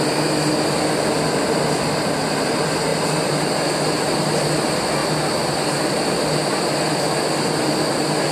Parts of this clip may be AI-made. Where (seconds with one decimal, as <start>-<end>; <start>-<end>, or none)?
none